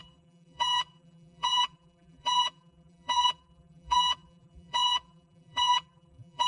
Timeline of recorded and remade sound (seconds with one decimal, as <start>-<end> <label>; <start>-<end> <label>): 0.0-6.5 remade